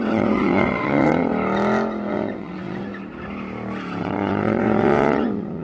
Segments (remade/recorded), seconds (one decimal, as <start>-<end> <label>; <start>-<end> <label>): 0.0-1.3 remade; 1.3-2.1 recorded; 2.1-2.9 remade; 2.9-4.0 recorded; 4.0-5.6 remade